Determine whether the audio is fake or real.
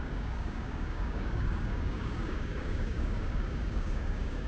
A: fake